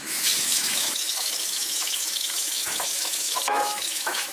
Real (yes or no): no